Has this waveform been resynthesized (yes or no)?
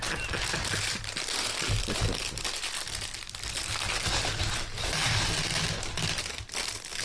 no